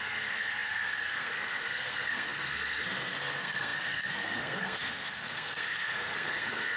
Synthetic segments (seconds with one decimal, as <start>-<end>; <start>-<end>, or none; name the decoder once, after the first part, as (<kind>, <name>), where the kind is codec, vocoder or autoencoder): 0.0-6.8 (codec, SNAC)